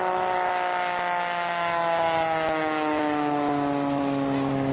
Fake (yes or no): no